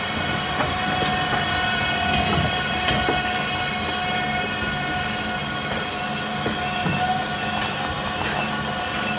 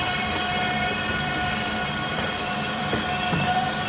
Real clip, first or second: first